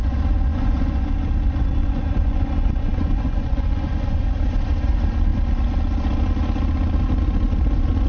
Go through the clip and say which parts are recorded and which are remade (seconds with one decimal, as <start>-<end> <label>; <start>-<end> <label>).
0.0-0.5 recorded; 0.5-1.1 remade; 1.1-1.8 recorded; 1.8-4.2 remade; 4.2-8.1 recorded